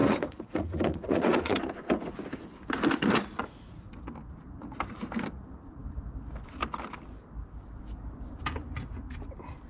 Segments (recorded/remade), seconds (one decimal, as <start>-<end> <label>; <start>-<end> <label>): 0.0-1.6 remade; 1.6-3.3 recorded; 3.3-3.9 remade; 3.9-9.7 recorded